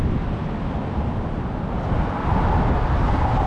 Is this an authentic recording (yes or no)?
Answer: yes